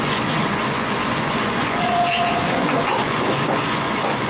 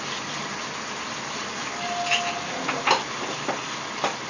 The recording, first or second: second